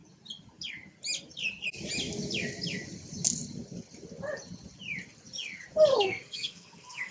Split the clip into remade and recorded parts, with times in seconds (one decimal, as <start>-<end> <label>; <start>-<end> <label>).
0.0-5.9 recorded; 5.9-7.1 remade